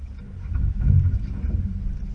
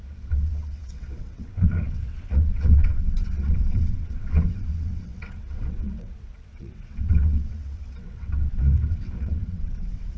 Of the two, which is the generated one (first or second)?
second